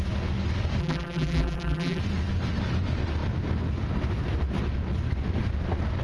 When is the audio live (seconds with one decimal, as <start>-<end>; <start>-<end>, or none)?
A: 0.0-0.8; 2.0-6.0